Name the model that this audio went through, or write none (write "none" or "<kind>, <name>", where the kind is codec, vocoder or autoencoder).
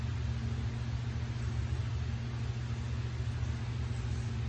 none